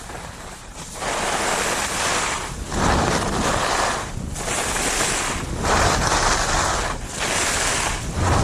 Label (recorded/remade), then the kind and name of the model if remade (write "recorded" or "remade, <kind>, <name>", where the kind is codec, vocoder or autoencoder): recorded